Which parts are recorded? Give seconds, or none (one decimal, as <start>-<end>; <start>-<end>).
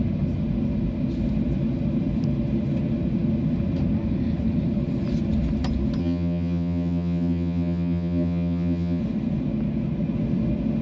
0.0-6.0; 9.0-10.8